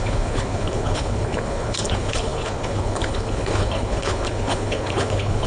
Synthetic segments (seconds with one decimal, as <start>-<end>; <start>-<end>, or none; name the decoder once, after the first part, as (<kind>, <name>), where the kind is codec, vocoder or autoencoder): 0.0-5.5 (codec, HILCodec)